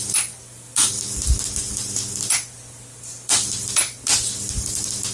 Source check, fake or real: real